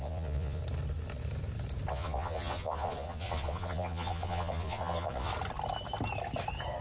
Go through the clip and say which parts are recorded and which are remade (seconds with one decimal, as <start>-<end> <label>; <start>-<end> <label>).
0.0-0.6 remade; 0.6-1.9 recorded; 1.9-5.3 remade; 5.3-6.8 recorded